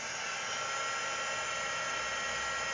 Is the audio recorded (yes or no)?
yes